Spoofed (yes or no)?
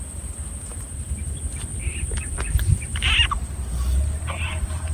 no